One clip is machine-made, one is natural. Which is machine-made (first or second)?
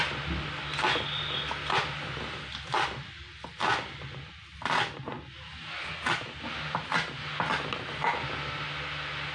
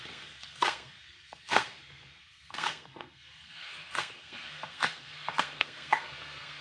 second